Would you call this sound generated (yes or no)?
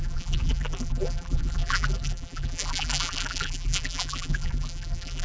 yes